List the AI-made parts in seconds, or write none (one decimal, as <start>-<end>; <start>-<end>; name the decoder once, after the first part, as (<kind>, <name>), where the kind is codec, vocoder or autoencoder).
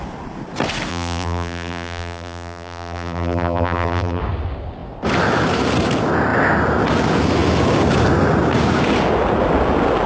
0.9-4.2 (vocoder, BigVGAN v2)